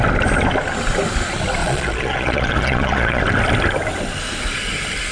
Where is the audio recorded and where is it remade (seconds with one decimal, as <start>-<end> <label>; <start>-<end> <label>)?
0.0-1.6 recorded; 1.6-3.2 remade; 3.2-5.1 recorded